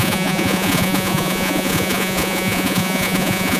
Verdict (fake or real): fake